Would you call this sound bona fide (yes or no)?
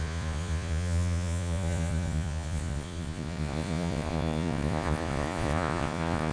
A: no